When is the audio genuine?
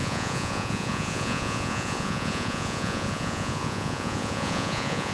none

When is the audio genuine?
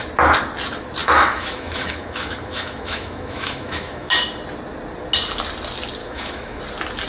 0.0-1.0; 4.1-6.0; 6.6-7.1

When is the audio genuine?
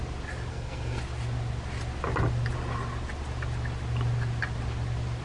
0.0-0.5; 1.0-5.2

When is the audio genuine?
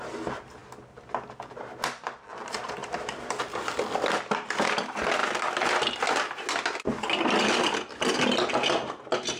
0.0-9.4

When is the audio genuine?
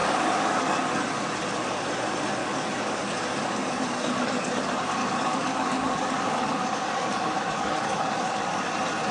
1.0-2.4; 4.5-5.0; 8.7-9.1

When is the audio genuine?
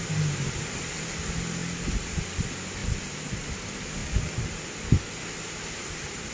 0.0-2.8; 3.5-6.3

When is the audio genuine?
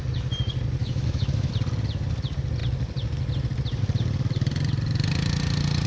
0.0-0.8; 1.5-5.9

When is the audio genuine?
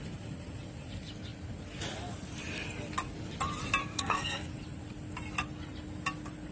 0.0-3.8; 4.5-6.5